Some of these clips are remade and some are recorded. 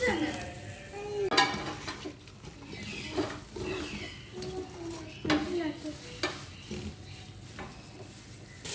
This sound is recorded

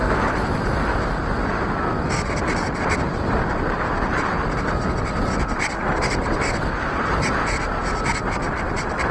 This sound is recorded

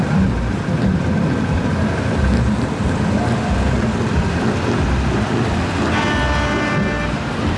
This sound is recorded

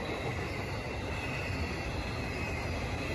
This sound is recorded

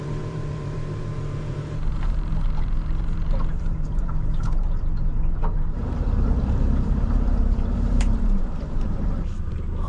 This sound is remade